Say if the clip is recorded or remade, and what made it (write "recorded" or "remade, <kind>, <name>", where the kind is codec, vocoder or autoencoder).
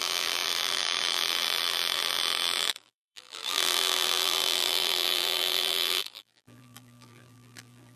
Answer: remade, vocoder, BigVGAN v2